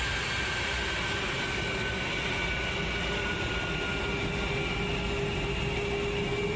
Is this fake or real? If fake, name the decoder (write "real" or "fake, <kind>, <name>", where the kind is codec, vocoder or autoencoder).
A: real